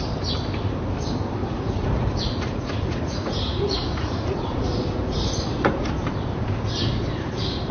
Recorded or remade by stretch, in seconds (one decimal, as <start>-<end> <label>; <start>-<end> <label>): 0.0-1.4 recorded; 1.4-5.9 remade; 5.9-7.7 recorded